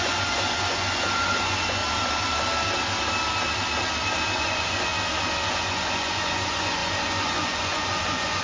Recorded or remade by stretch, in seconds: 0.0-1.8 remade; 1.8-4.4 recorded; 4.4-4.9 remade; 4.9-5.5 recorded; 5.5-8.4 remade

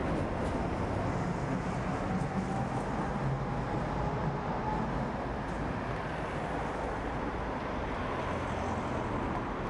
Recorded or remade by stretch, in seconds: 0.0-9.7 recorded

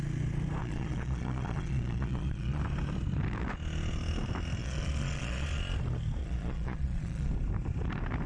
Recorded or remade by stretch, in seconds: 0.0-0.6 recorded; 0.6-2.6 remade; 2.6-4.6 recorded; 4.6-5.6 remade; 5.6-6.2 recorded; 6.2-7.3 remade; 7.3-8.3 recorded